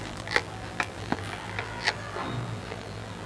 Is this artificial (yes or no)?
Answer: yes